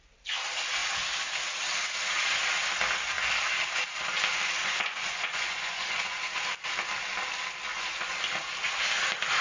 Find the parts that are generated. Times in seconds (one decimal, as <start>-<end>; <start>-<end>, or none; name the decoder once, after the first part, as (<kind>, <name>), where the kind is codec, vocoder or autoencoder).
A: 4.6-6.3 (vocoder, Vocos); 7.7-8.2